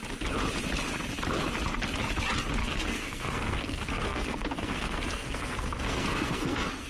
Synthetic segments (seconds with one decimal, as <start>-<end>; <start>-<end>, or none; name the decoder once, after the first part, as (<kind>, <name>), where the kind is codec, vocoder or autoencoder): 2.6-6.9 (codec, SNAC)